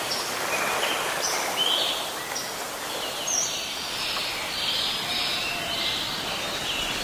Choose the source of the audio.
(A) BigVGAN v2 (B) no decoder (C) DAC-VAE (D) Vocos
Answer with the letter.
B